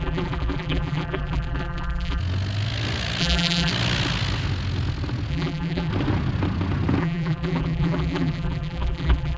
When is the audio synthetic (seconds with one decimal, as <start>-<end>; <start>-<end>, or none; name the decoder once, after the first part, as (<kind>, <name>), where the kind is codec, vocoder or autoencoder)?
0.0-2.2 (vocoder, BigVGAN v2); 3.2-3.7; 5.3-5.9; 7.0-9.4